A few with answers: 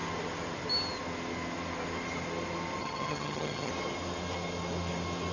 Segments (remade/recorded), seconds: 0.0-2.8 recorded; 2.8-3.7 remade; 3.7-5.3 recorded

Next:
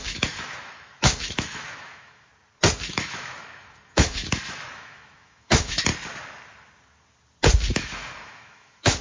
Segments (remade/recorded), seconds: 0.0-2.3 remade; 2.3-2.9 recorded; 2.9-5.9 remade; 5.9-7.7 recorded; 7.7-9.0 remade